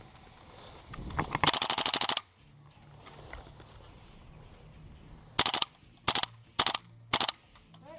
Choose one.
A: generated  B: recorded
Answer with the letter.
B